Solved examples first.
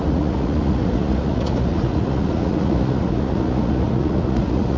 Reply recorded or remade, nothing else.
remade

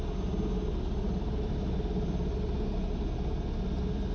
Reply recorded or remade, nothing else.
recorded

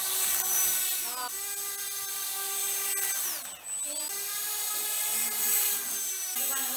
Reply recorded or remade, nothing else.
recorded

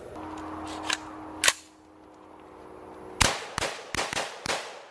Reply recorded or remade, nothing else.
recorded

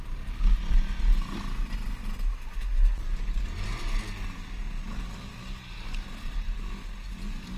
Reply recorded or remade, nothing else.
recorded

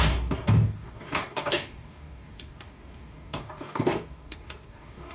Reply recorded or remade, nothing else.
remade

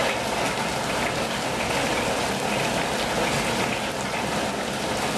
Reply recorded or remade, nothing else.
recorded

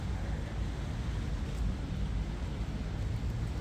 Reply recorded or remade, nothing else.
recorded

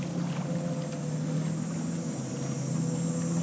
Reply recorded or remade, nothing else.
recorded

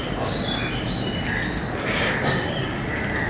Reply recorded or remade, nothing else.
recorded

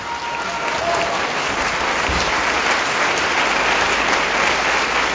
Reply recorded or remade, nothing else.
recorded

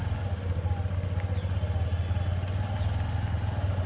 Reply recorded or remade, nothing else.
recorded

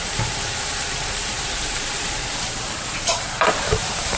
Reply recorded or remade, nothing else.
remade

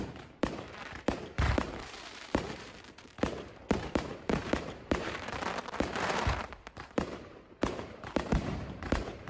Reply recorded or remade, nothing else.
remade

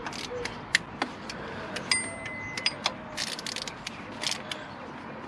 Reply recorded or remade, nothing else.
recorded